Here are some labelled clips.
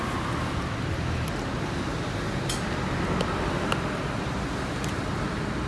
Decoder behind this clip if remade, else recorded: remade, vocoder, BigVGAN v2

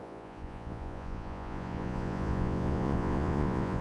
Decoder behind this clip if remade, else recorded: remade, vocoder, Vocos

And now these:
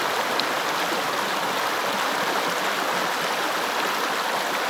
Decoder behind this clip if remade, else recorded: recorded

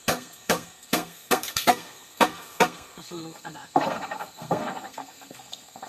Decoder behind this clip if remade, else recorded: remade, codec, SNAC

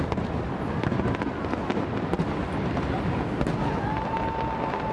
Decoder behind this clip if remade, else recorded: recorded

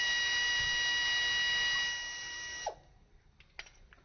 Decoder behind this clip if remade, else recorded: recorded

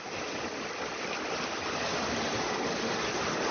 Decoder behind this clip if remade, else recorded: recorded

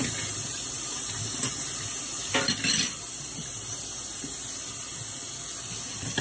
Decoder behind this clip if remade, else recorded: recorded